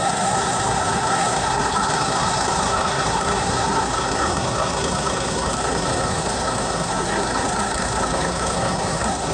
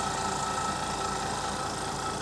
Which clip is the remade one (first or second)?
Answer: first